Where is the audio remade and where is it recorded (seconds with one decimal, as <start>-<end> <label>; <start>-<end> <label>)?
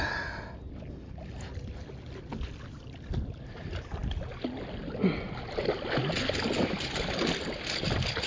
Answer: 0.0-8.3 recorded